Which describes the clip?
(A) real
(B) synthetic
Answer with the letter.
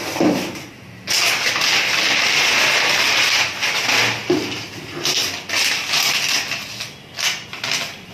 A